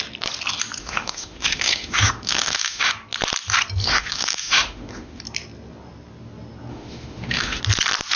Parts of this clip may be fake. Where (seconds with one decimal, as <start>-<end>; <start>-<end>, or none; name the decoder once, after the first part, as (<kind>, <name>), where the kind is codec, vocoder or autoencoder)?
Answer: 0.8-2.9 (autoencoder, DAC-VAE); 3.9-5.2; 6.7-7.6